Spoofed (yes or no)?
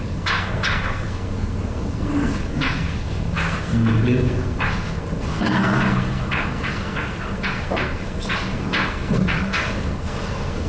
yes